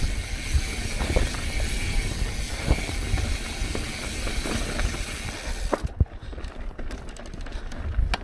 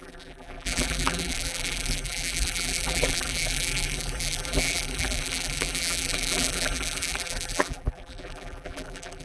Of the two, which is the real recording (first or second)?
first